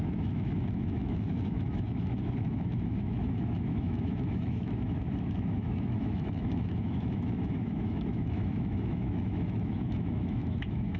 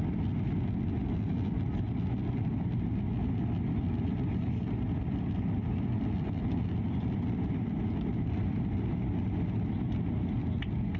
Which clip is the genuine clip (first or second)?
second